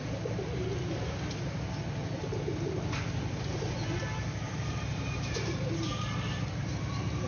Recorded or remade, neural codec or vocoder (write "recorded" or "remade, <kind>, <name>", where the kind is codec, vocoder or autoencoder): remade, vocoder, BigVGAN v2